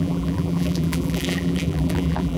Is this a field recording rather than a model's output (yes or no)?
no